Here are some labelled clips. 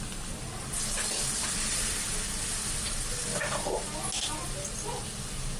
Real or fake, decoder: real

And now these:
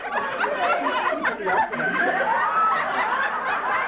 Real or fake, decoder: real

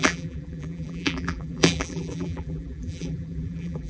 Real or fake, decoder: fake, vocoder, BigVGAN v2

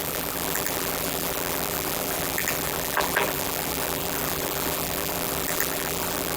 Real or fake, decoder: fake, vocoder, BigVGAN v2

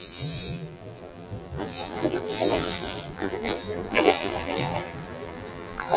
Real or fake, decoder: fake, vocoder, BigVGAN v2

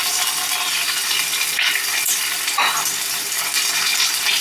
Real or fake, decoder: real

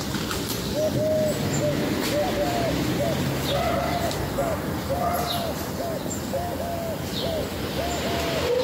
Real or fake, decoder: real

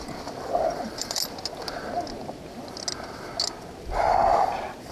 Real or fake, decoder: real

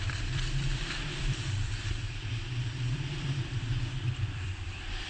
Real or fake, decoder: fake, vocoder, BigVGAN v2